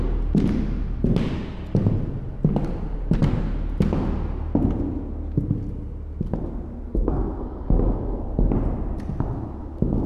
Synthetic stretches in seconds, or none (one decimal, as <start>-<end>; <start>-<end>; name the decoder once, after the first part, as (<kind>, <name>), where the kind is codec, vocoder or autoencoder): 6.9-8.2 (codec, SNAC)